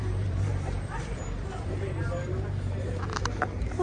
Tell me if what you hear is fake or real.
fake